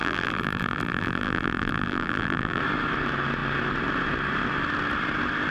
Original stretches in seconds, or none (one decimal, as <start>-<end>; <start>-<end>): 2.6-5.5